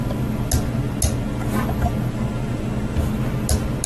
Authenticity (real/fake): real